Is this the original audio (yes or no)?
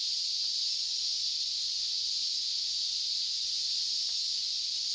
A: yes